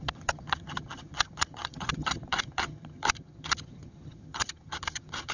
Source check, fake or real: fake